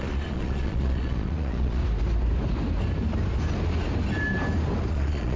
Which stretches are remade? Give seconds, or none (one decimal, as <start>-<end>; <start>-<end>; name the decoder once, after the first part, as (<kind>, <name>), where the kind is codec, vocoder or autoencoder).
0.0-1.8 (vocoder, Vocos); 4.9-5.4